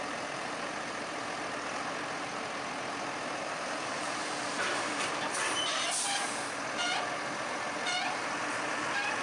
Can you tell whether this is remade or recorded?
recorded